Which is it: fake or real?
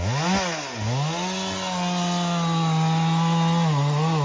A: real